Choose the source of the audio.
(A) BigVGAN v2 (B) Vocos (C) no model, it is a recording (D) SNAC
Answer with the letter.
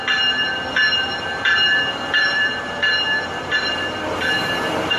A